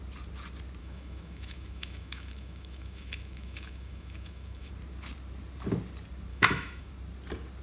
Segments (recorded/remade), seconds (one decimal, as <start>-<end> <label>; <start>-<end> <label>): 0.0-0.8 recorded; 0.8-4.7 remade; 4.7-6.3 recorded; 6.3-6.9 remade; 6.9-7.6 recorded